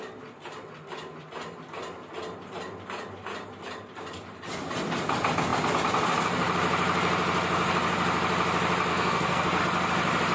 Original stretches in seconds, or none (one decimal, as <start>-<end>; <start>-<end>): 0.0-8.9; 9.6-10.3